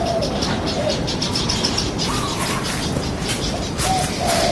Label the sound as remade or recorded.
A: recorded